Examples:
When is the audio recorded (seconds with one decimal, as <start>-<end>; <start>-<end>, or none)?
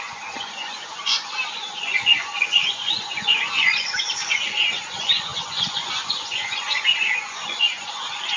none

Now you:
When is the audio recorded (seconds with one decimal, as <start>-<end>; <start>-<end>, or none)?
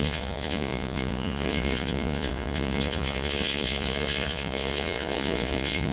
none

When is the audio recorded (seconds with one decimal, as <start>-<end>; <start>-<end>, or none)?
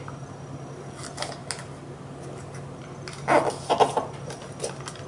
0.0-5.1